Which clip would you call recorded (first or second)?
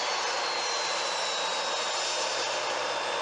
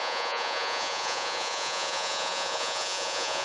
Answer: first